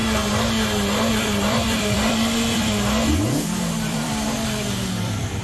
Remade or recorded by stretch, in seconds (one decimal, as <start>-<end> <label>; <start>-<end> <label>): 0.0-1.1 recorded; 1.1-5.4 remade